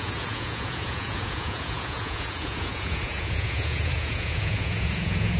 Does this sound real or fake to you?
fake